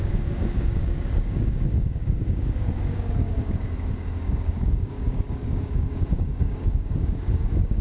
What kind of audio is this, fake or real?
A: fake